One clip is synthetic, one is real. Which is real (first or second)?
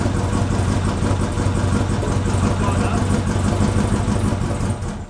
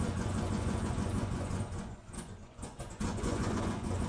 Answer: first